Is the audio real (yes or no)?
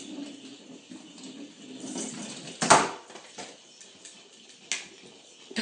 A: yes